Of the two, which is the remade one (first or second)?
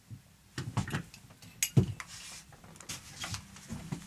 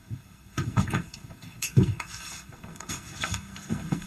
second